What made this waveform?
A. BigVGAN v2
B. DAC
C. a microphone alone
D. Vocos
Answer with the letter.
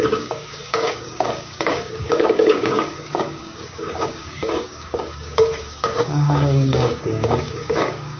B